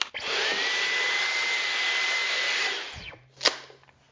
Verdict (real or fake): real